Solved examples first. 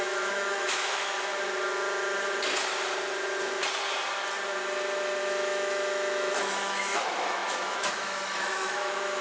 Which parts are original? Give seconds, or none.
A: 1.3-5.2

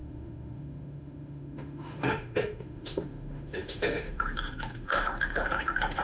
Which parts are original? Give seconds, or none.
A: none

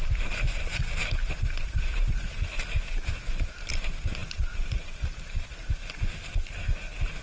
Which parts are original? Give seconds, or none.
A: 0.5-1.3; 2.5-3.7; 5.5-7.2

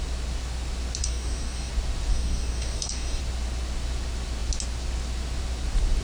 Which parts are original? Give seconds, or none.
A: 0.0-1.0; 1.7-2.1; 3.2-6.0

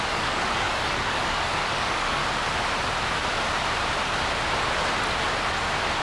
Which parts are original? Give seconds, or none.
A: 2.2-6.0

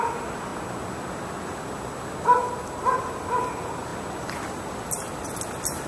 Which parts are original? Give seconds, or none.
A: 0.0-5.9